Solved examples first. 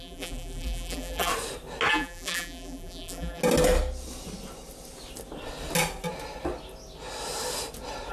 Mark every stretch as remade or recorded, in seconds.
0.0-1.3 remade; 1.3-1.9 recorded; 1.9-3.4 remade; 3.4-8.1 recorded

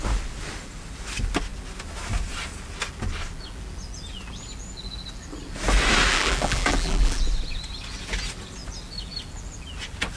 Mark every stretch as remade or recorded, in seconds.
0.0-6.1 recorded; 6.1-7.2 remade; 7.2-10.2 recorded

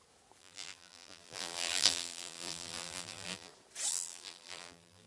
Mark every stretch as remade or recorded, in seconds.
0.0-0.4 recorded; 0.4-3.5 remade; 3.5-3.9 recorded; 3.9-5.1 remade

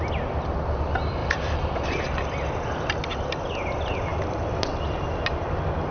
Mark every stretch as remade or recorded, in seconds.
0.0-1.2 recorded; 1.2-2.3 remade; 2.3-5.9 recorded

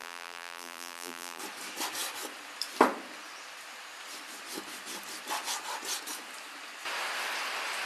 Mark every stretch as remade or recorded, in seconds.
0.0-1.4 remade; 1.4-7.9 recorded